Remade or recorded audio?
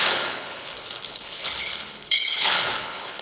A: remade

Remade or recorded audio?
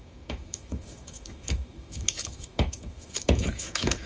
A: remade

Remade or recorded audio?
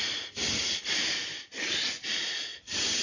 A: recorded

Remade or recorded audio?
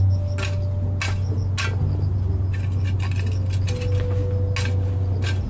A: recorded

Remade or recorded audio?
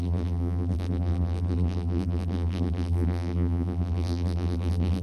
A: remade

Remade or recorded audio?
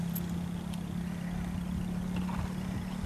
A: recorded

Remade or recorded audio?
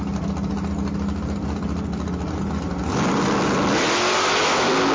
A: recorded